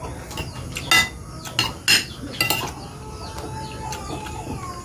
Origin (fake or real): real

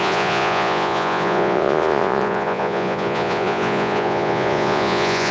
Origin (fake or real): fake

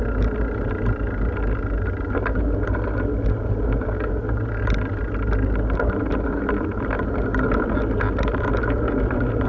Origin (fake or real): real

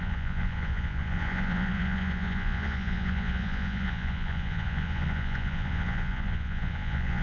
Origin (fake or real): fake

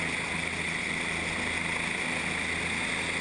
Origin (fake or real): real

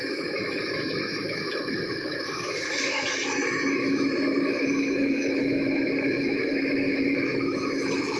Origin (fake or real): fake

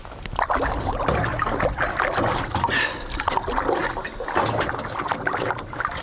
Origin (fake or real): real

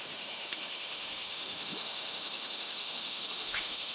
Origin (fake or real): fake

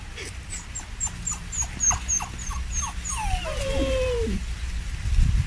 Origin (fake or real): real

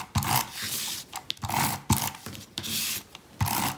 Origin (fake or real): real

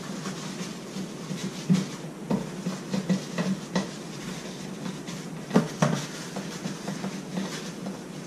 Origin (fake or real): real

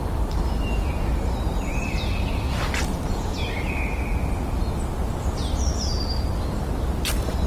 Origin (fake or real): real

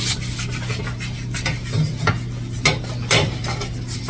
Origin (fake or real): real